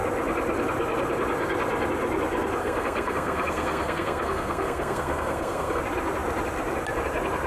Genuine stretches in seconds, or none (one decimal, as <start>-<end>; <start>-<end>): 0.0-2.6; 5.8-7.5